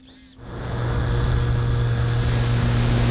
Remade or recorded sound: recorded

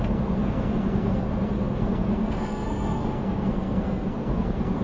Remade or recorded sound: remade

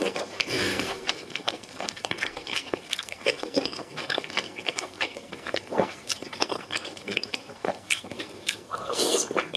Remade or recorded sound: remade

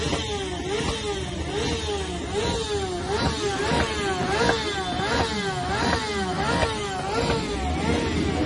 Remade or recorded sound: recorded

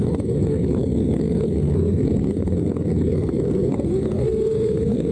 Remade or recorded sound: remade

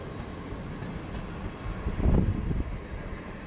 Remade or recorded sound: recorded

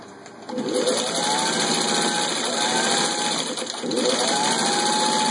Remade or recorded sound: recorded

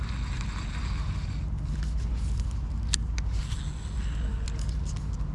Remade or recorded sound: recorded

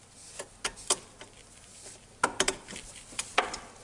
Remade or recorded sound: recorded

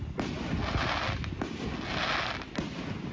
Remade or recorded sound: recorded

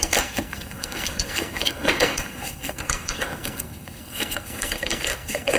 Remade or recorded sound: remade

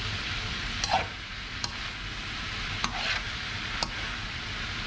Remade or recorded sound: recorded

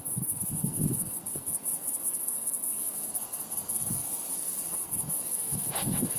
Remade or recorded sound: remade